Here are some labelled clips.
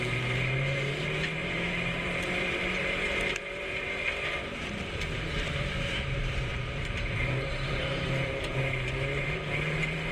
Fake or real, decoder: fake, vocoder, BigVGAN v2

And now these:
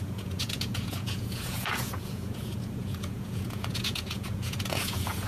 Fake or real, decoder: fake, vocoder, Vocos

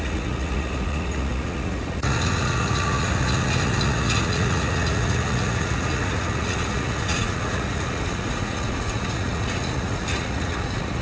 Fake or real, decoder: fake, vocoder, Vocos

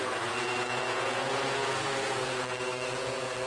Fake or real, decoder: fake, vocoder, Vocos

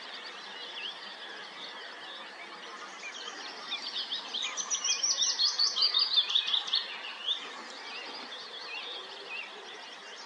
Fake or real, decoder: real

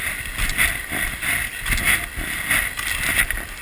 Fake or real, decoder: real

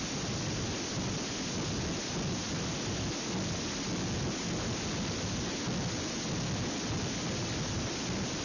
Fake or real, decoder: real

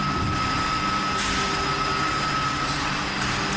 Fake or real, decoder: real